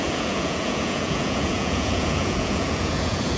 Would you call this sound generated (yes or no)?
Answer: yes